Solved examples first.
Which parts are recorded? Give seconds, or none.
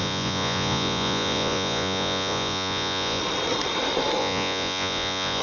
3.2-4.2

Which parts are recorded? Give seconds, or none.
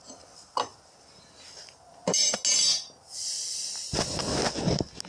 0.0-5.1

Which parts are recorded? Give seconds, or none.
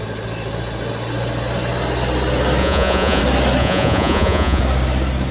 0.0-2.6; 3.2-3.6; 4.6-5.3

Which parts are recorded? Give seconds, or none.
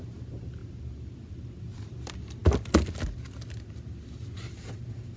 0.0-5.2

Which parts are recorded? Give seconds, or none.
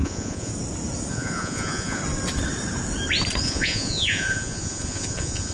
0.5-1.1; 2.0-3.4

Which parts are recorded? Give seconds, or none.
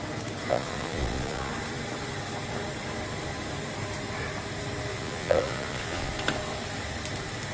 0.0-0.5; 1.5-4.9; 6.1-7.5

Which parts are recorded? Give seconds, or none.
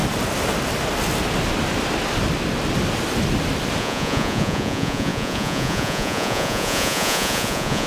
0.0-3.8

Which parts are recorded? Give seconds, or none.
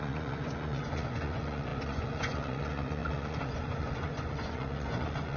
none